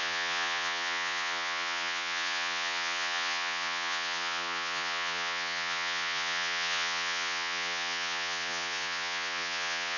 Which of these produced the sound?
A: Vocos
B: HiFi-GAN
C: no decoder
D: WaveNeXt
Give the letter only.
A